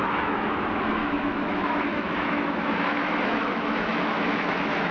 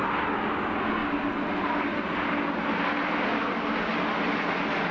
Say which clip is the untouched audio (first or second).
second